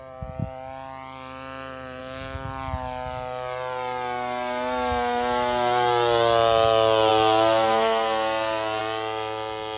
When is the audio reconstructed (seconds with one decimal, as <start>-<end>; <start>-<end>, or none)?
none